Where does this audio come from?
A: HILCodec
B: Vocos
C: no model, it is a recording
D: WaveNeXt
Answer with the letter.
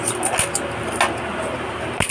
C